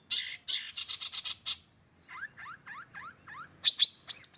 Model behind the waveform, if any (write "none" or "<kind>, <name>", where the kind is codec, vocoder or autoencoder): none